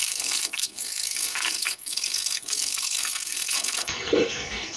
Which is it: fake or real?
fake